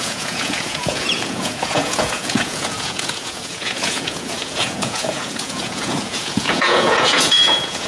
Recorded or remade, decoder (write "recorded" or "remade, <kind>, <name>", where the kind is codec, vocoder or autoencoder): remade, vocoder, Vocos